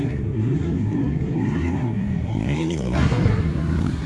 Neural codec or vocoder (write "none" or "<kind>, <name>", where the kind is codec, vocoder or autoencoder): codec, SNAC